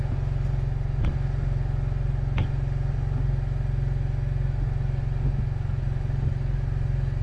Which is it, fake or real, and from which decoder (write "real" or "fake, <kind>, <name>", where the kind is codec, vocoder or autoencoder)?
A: real